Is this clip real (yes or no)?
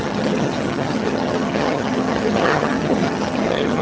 no